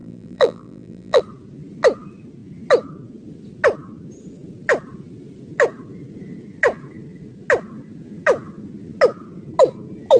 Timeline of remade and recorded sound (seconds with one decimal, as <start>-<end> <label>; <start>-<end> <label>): 0.0-1.2 remade; 1.2-10.2 recorded